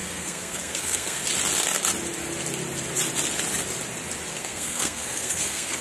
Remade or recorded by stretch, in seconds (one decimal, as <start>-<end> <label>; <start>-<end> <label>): 0.0-1.2 remade; 1.2-4.4 recorded; 4.4-5.8 remade